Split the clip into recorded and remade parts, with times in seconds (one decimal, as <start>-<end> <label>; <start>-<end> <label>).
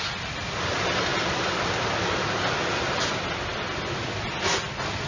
0.0-5.1 recorded